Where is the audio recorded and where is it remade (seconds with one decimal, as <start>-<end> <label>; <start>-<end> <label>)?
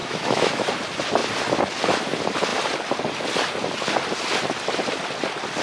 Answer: 0.0-0.7 remade; 0.7-5.6 recorded